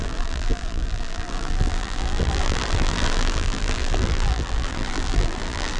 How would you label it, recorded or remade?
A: remade